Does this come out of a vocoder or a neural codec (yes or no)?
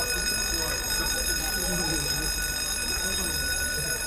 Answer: no